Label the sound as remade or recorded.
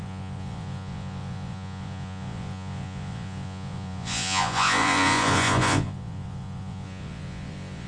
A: remade